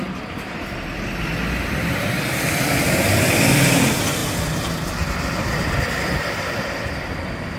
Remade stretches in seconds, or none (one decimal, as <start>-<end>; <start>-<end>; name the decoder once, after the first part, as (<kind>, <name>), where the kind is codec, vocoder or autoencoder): 0.0-4.2 (vocoder, BigVGAN v2); 4.9-7.6